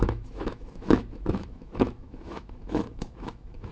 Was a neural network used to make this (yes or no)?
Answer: yes